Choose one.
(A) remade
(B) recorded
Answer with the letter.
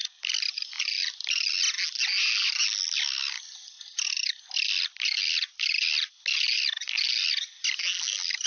B